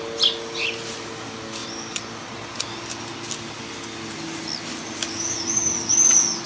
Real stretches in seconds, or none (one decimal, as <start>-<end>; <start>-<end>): 0.0-6.5